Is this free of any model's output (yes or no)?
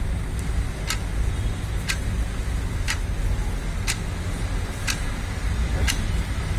yes